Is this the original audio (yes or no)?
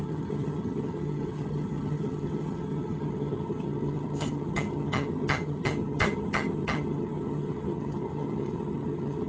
no